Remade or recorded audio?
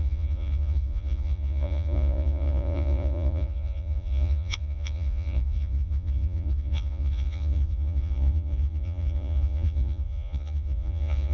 remade